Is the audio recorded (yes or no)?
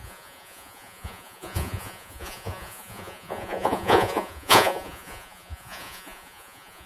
no